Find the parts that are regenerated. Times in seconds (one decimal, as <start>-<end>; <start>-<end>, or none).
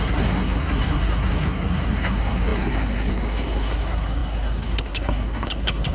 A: 0.0-5.9